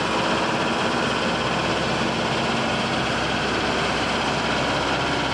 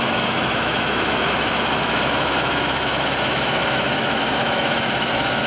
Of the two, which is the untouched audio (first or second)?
first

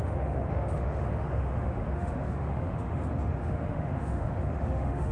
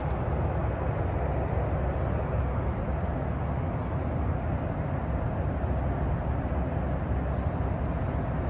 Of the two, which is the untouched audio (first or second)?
second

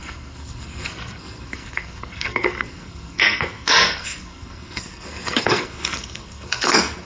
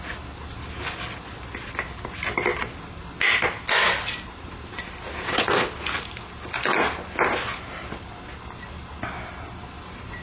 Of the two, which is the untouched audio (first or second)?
second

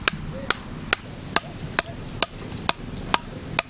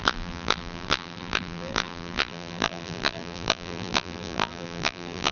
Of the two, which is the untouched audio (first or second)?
first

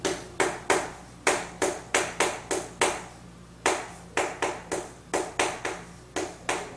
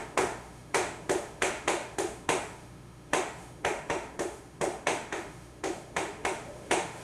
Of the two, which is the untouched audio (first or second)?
first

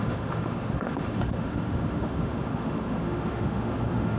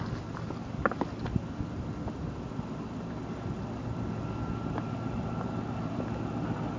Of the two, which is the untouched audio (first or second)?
second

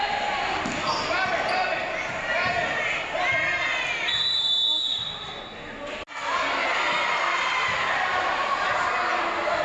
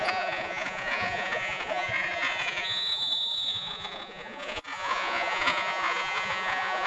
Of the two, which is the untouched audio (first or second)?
first